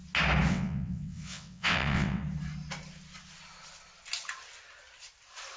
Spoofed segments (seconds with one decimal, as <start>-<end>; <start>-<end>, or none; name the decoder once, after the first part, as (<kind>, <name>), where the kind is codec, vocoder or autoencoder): 0.5-2.2 (vocoder, WaveNeXt)

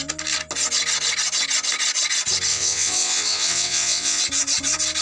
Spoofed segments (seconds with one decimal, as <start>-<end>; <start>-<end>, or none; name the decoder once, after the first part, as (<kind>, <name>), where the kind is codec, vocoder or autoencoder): 2.5-4.2 (vocoder, WaveNeXt)